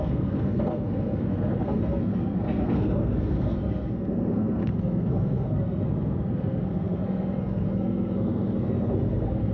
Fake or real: fake